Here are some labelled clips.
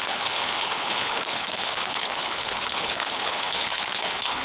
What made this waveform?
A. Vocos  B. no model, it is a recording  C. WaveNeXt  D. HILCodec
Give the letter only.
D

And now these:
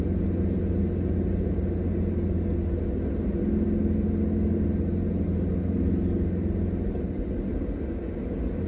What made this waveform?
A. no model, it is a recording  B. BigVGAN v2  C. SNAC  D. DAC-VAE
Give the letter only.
A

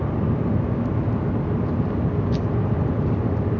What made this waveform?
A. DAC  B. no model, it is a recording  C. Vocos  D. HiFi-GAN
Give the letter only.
B